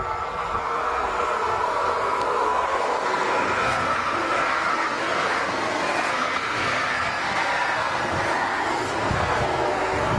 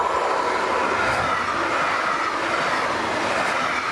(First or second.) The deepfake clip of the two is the first